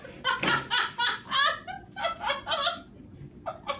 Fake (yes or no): no